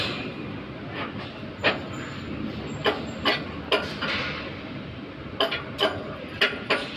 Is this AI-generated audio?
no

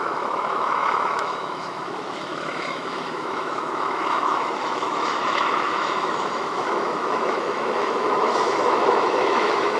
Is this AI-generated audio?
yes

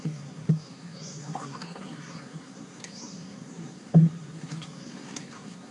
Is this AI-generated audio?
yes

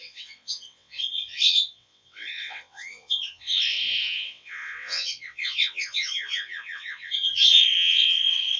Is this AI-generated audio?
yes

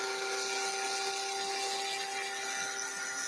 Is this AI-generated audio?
no